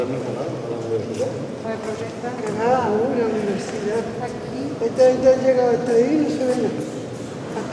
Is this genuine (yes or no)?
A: yes